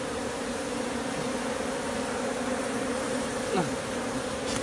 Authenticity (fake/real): fake